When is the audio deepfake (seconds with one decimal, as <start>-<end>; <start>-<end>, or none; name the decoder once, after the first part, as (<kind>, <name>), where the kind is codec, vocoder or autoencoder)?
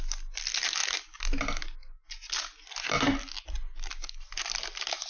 none